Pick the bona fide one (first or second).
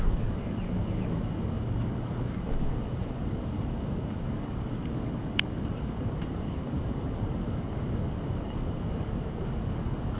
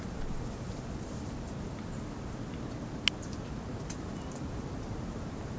second